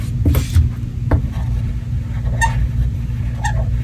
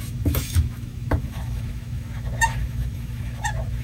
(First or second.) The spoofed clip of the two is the second